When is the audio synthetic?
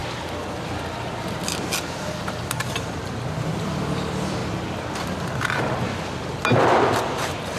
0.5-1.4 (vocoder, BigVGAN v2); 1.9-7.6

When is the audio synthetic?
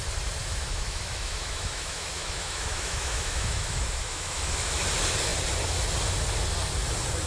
0.4-4.8 (autoencoder, DAC-VAE)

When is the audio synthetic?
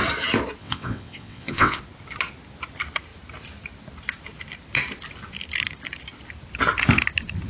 0.6-1.8 (vocoder, WaveNeXt)